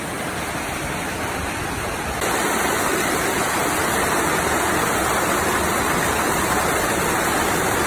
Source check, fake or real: real